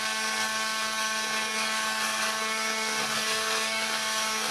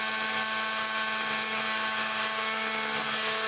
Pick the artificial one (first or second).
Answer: first